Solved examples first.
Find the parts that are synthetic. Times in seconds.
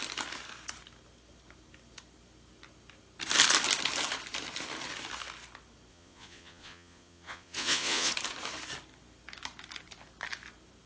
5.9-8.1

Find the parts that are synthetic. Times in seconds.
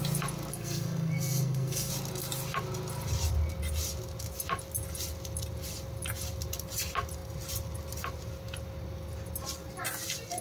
0.5-1.9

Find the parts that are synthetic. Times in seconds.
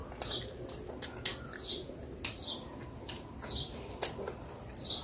none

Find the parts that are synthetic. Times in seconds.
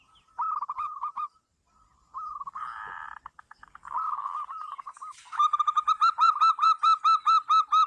1.5-2.9; 5.0-7.0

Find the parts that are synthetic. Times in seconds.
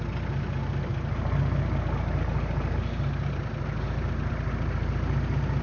none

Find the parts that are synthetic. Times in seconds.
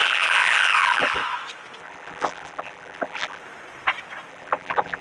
0.0-1.2; 1.8-3.4; 4.3-5.0